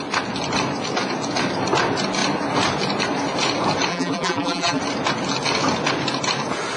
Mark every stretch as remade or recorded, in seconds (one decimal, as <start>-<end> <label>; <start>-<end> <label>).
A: 0.0-3.9 recorded; 3.9-4.8 remade; 4.8-6.8 recorded